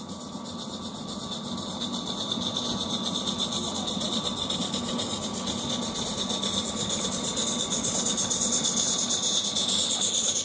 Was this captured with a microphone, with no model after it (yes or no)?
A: yes